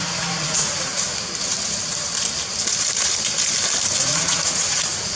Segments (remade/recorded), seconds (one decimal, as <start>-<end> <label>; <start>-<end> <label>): 0.0-0.9 remade; 0.9-4.0 recorded; 4.0-5.2 remade